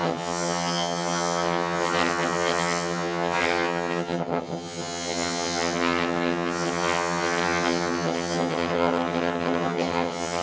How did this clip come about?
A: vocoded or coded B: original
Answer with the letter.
A